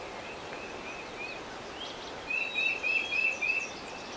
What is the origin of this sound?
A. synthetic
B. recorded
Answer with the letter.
B